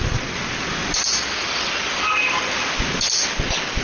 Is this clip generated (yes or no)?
no